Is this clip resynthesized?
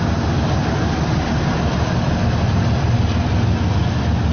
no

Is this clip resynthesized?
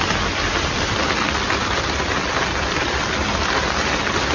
yes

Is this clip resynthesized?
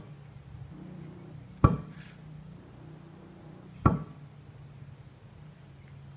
no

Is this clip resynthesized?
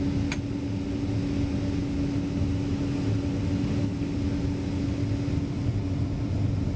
no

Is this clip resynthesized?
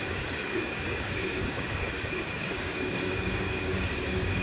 yes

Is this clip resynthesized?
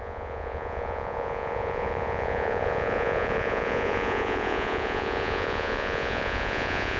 yes